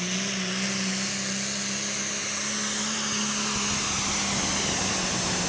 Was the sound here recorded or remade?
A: recorded